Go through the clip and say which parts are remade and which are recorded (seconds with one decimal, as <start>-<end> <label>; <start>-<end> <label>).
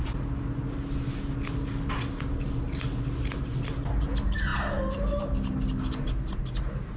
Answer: 0.0-7.0 recorded